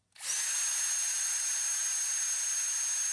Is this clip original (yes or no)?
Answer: yes